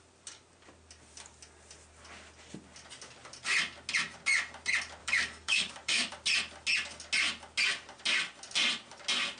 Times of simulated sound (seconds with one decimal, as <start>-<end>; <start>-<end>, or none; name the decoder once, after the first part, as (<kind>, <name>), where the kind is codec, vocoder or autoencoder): 5.0-6.1 (codec, DAC)